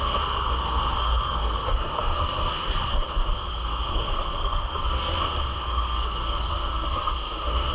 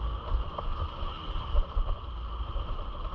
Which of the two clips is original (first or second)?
second